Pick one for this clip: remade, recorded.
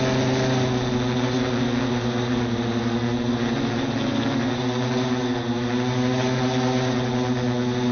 recorded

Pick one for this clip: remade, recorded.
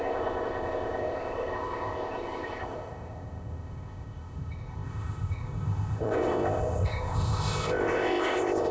remade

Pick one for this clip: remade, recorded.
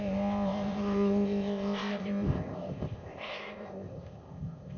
remade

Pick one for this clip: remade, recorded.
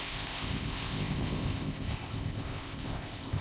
remade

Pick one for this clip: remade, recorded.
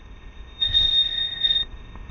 remade